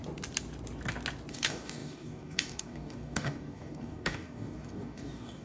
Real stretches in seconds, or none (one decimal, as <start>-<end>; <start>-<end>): 0.0-1.3